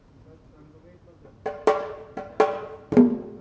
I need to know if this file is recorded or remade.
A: recorded